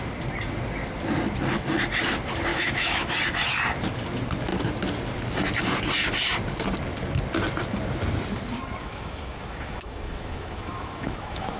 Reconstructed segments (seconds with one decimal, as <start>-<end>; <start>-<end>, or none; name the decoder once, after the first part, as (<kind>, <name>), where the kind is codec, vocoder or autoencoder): 2.5-3.1 (autoencoder, DAC-VAE); 8.8-11.6